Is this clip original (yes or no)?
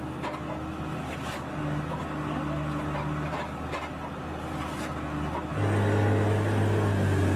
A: yes